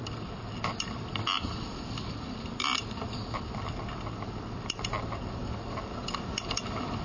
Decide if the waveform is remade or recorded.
recorded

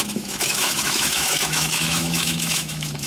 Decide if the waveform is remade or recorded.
remade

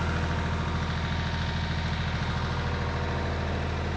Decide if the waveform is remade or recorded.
recorded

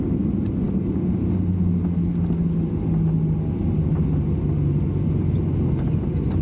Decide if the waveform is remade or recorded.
recorded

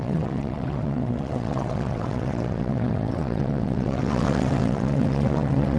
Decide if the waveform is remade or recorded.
remade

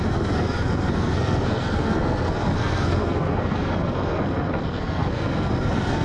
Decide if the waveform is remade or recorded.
remade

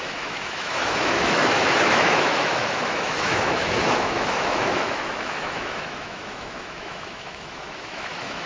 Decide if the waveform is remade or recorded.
remade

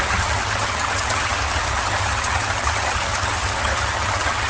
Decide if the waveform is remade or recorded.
remade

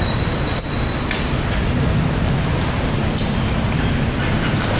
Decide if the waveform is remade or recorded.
recorded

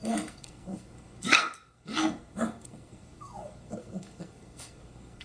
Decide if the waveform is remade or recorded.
remade